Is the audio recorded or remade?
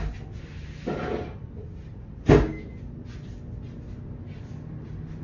recorded